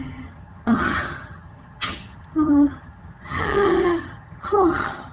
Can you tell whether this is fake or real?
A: fake